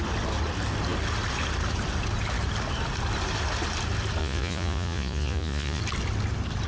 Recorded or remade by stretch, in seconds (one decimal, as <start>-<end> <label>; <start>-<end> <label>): 0.0-4.2 recorded; 4.2-5.8 remade; 5.8-6.7 recorded